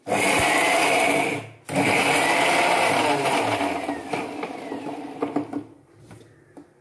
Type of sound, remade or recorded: recorded